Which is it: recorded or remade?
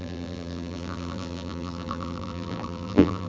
remade